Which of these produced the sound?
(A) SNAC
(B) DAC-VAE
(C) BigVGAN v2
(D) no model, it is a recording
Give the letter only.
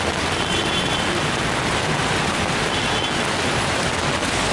D